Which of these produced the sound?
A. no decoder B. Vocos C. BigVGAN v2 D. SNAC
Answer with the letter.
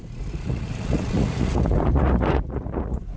B